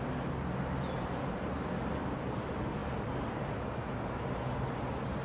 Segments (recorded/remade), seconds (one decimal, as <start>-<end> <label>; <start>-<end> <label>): 0.0-5.2 recorded